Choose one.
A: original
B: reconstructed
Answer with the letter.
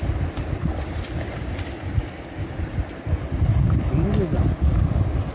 A